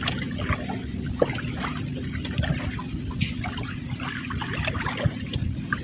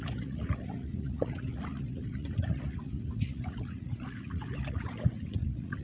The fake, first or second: second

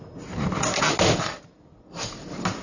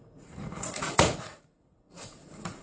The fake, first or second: second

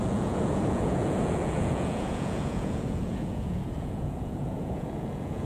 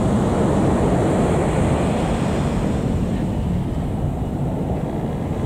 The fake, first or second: first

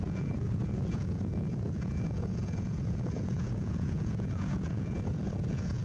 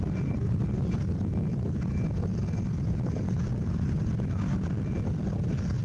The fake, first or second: first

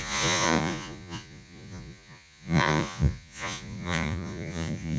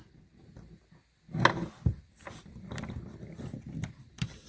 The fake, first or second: first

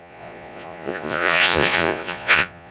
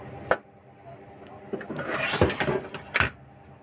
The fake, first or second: first